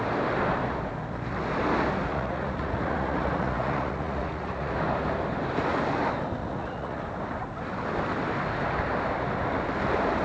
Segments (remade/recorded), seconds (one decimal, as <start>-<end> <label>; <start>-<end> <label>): 0.0-2.1 recorded; 2.1-4.7 remade; 4.7-6.4 recorded; 6.4-7.0 remade; 7.0-10.2 recorded